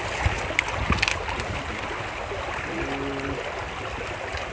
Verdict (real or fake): real